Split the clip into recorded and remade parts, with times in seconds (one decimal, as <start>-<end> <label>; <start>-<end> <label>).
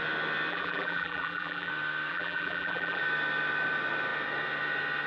0.0-0.5 recorded; 0.5-1.7 remade; 1.7-2.1 recorded; 2.1-3.0 remade; 3.0-5.1 recorded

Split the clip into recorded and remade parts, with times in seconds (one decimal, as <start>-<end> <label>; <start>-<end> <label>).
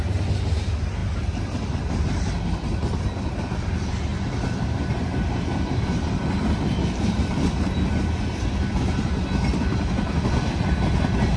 0.0-4.1 recorded; 4.1-7.9 remade; 7.9-11.4 recorded